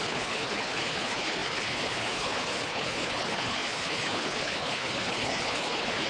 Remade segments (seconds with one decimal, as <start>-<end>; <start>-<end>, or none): 0.0-6.1